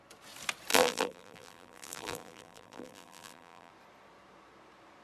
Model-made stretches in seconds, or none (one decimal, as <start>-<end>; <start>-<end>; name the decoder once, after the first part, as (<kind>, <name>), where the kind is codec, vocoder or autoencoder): 0.7-3.7 (vocoder, BigVGAN v2)